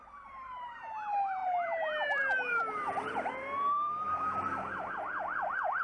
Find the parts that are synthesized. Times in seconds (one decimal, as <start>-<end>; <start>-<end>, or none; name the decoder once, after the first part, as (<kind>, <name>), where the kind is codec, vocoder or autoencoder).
0.0-0.7 (vocoder, BigVGAN v2); 1.4-4.9